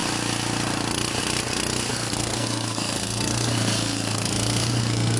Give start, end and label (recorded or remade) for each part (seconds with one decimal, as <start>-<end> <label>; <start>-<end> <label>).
0.0-1.9 recorded; 1.9-5.2 remade

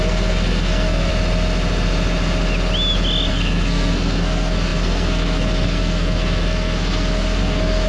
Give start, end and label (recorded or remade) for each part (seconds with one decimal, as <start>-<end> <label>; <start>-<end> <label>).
0.0-1.1 remade; 1.1-3.3 recorded; 3.3-7.9 remade

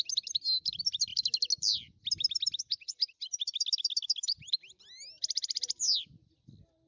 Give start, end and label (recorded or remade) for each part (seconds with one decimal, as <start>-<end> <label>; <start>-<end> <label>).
0.0-6.9 recorded

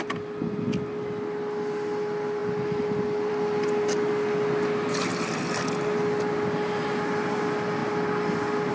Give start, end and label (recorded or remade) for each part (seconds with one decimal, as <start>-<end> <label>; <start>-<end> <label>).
0.0-8.7 recorded

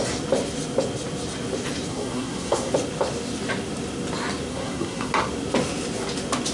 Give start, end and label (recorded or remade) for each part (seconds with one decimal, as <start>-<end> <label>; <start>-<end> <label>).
0.0-1.9 recorded; 1.9-2.7 remade; 2.7-4.5 recorded; 4.5-5.1 remade; 5.1-6.5 recorded

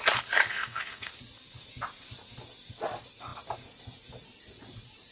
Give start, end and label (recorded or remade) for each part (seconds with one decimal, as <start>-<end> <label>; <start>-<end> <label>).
0.0-0.5 recorded; 0.5-1.1 remade; 1.1-5.1 recorded

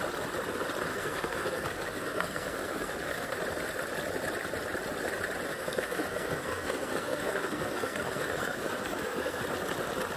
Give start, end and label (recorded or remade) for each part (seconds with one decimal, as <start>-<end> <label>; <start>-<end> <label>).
0.0-0.9 recorded; 0.9-3.4 remade; 3.4-5.5 recorded; 5.5-9.4 remade; 9.4-10.2 recorded

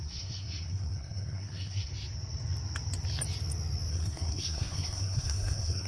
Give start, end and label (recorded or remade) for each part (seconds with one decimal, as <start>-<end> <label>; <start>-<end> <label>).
0.0-1.9 remade; 1.9-3.9 recorded; 3.9-5.9 remade